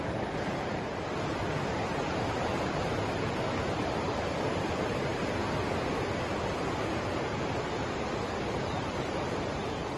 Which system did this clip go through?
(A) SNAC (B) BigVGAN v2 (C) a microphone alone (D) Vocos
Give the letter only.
C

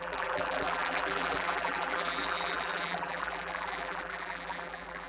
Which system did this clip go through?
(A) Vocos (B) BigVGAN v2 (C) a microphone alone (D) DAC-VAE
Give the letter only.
B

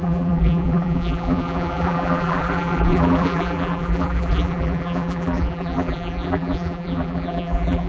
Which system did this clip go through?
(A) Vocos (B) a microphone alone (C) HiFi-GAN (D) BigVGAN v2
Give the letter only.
D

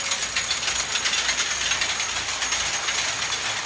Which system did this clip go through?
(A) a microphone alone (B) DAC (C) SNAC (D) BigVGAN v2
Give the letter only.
A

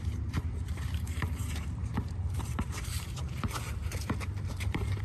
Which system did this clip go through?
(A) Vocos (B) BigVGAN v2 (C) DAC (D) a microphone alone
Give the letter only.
B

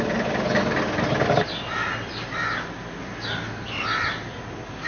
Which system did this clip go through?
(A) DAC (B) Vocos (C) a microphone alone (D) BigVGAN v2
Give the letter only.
C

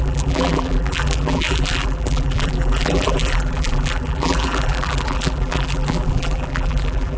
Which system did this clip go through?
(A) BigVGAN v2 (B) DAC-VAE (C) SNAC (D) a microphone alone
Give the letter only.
A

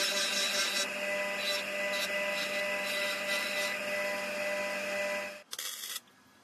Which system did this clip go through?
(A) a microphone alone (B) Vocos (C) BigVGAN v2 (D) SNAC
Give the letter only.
A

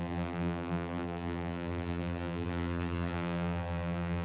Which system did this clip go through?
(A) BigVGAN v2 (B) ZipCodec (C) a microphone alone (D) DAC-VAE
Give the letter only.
A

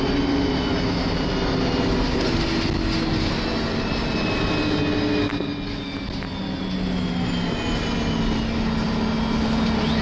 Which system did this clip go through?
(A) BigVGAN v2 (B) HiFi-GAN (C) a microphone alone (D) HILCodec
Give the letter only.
C